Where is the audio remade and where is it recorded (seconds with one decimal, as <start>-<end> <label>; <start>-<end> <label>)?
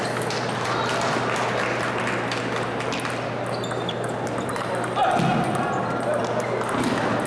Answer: 0.0-7.3 recorded